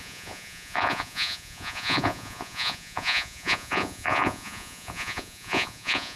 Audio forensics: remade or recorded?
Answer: remade